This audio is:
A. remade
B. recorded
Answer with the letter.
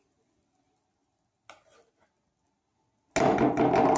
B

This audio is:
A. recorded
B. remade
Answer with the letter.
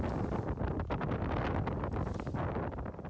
A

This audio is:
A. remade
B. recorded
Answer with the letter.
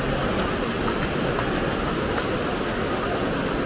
B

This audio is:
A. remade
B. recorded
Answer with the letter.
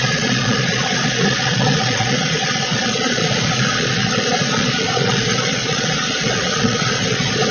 A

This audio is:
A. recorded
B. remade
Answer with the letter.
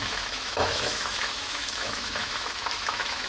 B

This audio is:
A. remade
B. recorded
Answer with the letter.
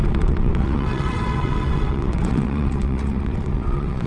A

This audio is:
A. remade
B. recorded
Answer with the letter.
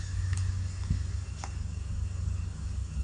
A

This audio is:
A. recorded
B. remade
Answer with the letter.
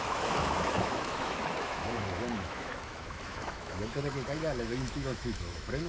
B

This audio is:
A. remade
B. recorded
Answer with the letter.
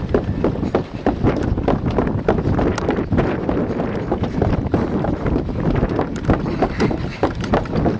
A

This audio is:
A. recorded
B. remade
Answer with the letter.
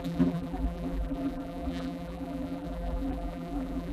B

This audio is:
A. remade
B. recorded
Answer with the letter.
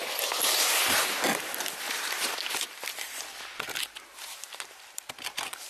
A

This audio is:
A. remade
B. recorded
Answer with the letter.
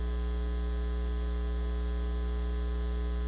B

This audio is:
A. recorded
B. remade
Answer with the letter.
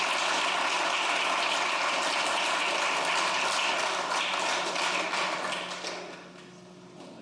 A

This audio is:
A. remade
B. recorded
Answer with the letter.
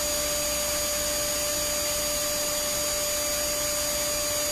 B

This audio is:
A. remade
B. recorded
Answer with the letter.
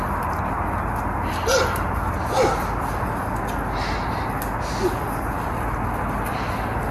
B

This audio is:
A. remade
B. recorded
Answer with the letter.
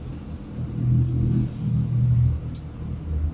B